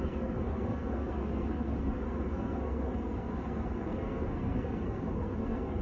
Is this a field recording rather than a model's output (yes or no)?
no